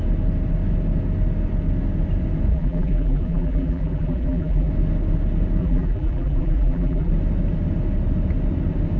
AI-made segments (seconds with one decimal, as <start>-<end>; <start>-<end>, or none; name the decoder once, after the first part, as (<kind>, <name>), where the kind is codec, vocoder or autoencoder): 2.5-4.7 (vocoder, BigVGAN v2); 5.6-7.1